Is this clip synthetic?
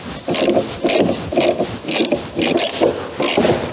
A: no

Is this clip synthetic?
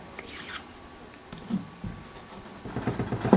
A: no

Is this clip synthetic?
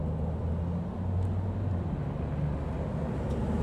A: no